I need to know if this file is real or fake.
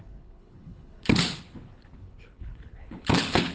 fake